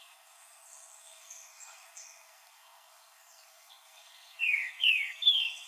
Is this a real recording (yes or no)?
no